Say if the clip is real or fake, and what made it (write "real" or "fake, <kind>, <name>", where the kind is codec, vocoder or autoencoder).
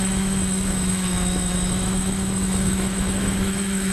fake, autoencoder, DAC-VAE